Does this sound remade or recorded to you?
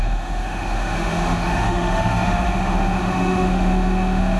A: remade